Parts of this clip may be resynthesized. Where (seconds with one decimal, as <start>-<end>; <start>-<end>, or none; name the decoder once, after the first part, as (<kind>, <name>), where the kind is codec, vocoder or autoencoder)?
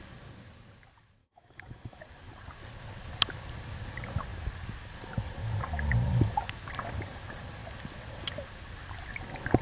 1.2-2.0 (autoencoder, DAC-VAE)